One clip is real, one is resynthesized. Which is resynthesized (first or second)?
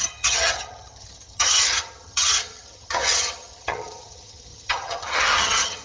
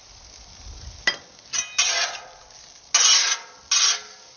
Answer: first